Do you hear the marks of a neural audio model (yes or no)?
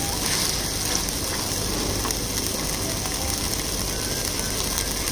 no